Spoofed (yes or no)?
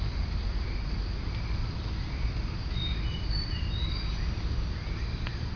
no